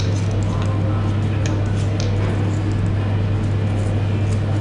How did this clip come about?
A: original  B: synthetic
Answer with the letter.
A